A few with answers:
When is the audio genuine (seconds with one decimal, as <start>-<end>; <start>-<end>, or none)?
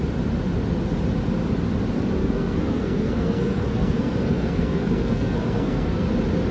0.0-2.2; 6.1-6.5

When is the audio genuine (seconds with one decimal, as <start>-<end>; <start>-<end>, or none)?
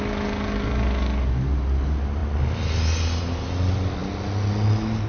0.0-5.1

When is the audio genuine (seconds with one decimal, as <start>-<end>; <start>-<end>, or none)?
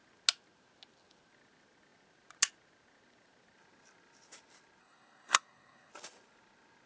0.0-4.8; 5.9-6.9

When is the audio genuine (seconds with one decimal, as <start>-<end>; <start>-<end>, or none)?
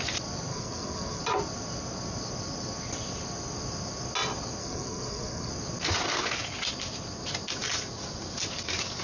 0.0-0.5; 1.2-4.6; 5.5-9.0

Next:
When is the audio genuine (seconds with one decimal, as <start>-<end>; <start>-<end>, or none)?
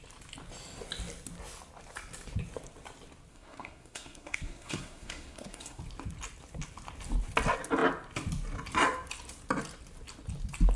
0.0-3.3; 5.8-10.8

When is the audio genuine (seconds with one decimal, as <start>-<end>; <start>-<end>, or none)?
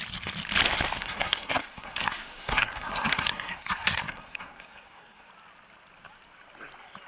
0.0-1.0; 5.3-7.1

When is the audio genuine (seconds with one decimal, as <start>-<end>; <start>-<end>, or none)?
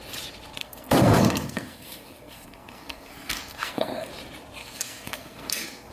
0.0-0.6; 4.1-4.6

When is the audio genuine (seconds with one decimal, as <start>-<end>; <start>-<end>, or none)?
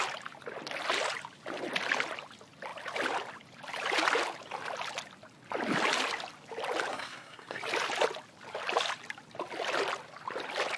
0.0-6.9; 7.6-10.8